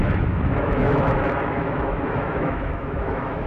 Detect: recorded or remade remade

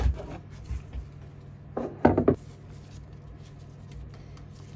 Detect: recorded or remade recorded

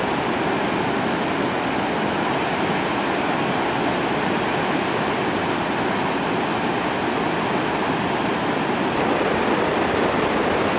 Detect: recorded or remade recorded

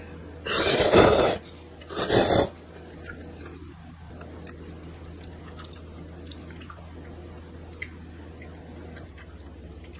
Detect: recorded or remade recorded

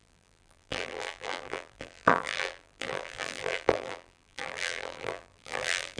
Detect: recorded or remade remade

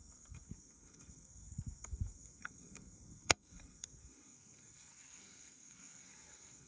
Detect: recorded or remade remade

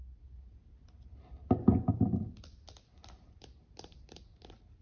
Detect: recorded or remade recorded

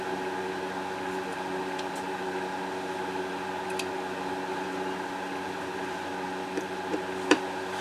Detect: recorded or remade recorded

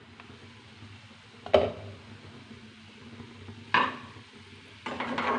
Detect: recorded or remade recorded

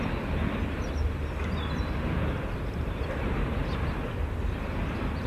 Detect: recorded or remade recorded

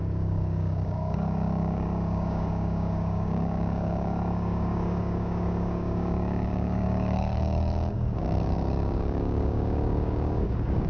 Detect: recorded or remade remade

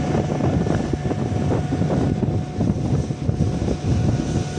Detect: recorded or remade recorded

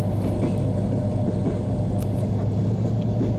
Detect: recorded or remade recorded